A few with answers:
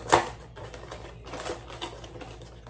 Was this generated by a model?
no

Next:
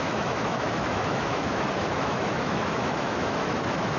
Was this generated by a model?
yes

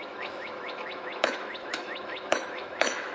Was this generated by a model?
yes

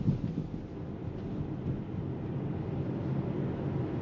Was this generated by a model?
no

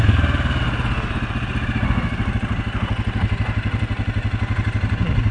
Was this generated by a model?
no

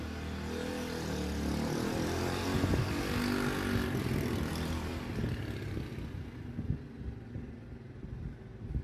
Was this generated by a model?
no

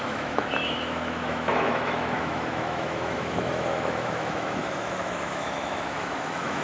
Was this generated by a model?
yes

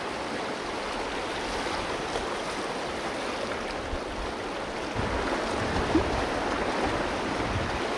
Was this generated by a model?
no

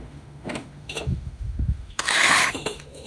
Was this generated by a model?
yes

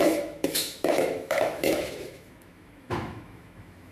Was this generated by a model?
yes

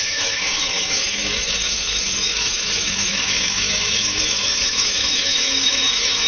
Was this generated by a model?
yes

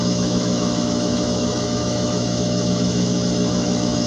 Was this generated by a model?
yes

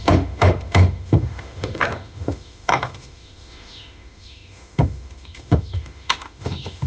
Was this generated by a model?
yes